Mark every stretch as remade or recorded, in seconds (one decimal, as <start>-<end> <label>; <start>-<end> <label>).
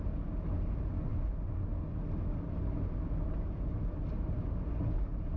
0.0-5.4 recorded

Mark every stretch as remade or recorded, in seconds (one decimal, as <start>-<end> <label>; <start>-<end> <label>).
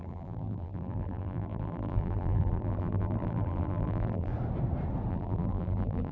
0.0-4.3 remade; 4.3-5.1 recorded; 5.1-6.1 remade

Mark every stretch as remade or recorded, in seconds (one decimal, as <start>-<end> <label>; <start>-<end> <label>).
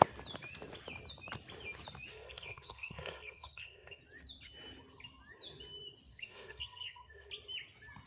0.0-2.1 recorded; 2.1-4.0 remade; 4.0-6.1 recorded; 6.1-7.3 remade; 7.3-8.1 recorded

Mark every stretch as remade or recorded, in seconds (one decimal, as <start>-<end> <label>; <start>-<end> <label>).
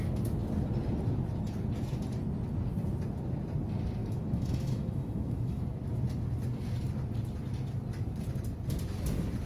0.0-4.0 recorded; 4.0-5.6 remade; 5.6-9.5 recorded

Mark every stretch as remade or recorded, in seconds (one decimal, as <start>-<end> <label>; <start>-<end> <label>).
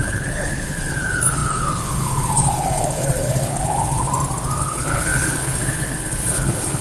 0.0-4.1 remade; 4.1-4.6 recorded; 4.6-6.8 remade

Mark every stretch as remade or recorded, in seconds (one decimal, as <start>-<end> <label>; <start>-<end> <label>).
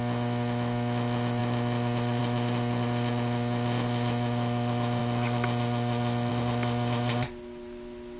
0.0-8.2 recorded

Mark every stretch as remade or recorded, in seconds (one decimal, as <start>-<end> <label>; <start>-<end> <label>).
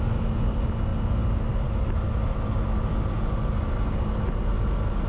0.0-5.1 recorded